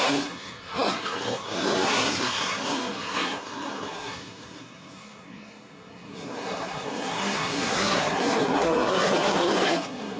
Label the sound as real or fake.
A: fake